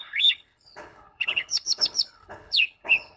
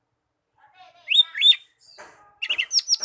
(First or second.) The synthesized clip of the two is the first